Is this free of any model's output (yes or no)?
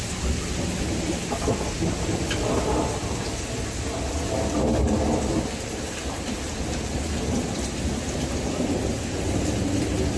yes